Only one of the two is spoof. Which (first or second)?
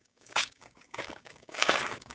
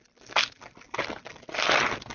first